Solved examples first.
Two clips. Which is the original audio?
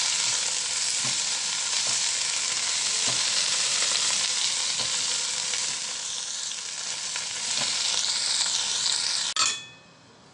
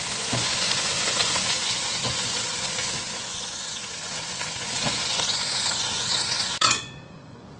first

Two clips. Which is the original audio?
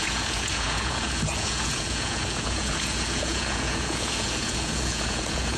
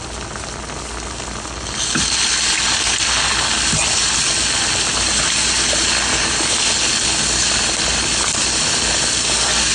second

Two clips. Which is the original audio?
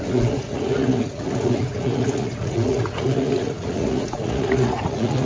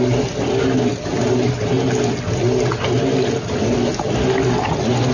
second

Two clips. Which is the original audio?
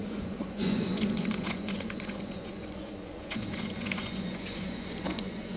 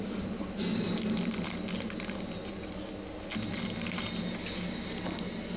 second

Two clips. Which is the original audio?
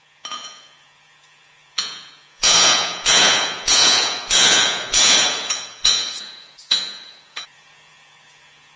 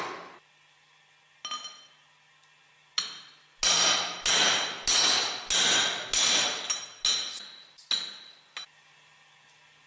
second